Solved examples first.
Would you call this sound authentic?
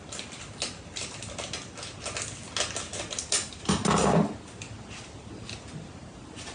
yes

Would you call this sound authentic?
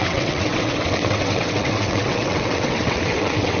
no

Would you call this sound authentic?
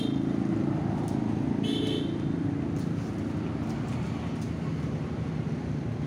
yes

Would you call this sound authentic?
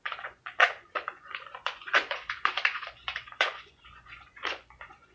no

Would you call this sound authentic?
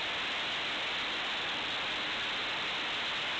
yes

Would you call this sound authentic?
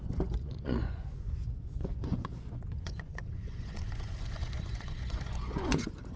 no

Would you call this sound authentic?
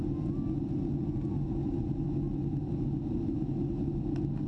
yes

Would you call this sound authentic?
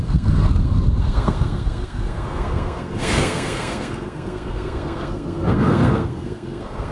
no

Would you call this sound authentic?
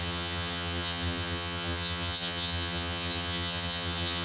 no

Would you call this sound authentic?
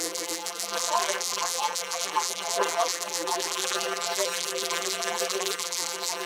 no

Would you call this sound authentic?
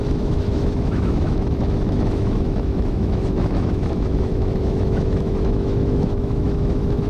no